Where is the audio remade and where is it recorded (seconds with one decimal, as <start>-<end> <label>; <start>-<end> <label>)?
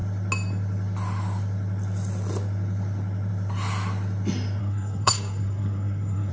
0.0-4.6 recorded; 4.6-6.3 remade